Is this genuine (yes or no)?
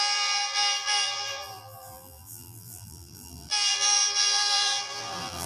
no